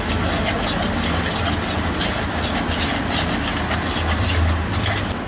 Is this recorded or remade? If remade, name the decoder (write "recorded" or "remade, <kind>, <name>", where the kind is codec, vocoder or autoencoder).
recorded